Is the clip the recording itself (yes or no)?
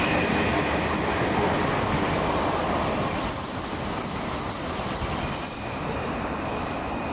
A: yes